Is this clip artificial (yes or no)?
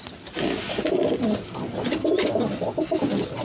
no